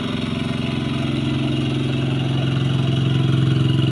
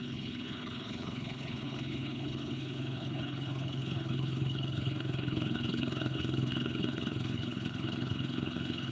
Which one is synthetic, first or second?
second